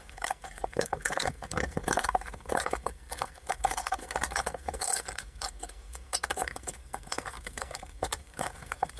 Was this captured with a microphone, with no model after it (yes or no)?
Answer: no